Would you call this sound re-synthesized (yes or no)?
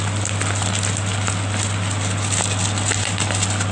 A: no